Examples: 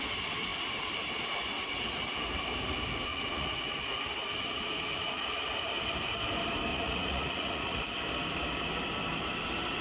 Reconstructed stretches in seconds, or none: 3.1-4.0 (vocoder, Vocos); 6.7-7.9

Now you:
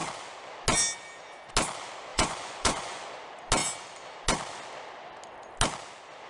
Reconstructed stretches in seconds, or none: 2.1-3.1 (vocoder, Vocos)

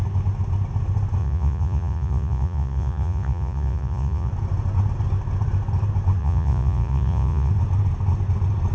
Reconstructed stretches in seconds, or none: 1.2-4.3 (vocoder, Vocos); 6.2-7.5

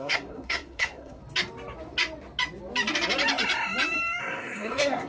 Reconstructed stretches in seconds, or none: 0.0-1.2 (codec, SNAC); 4.2-5.1

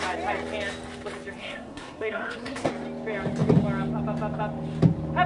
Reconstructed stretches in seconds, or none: 1.4-2.7 (codec, SNAC)

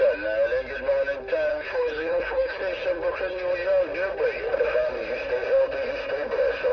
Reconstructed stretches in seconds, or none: 1.5-2.6 (codec, HILCodec)

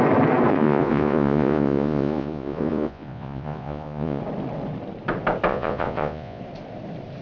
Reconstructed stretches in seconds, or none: 0.5-4.2 (vocoder, Vocos); 5.5-6.4